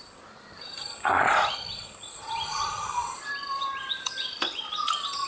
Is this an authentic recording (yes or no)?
no